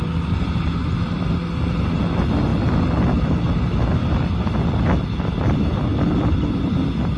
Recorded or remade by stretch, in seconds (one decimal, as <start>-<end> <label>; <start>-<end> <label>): 0.0-7.2 recorded